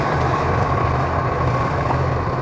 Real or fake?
real